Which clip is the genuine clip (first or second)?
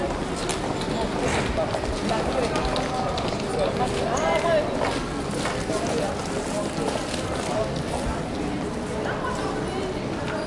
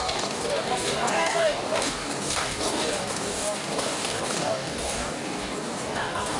first